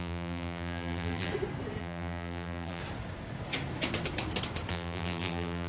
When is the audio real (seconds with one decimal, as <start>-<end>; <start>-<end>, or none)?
1.3-1.8; 2.8-4.7